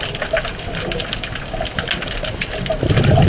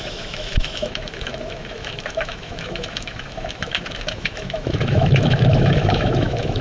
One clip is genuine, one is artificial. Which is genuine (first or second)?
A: first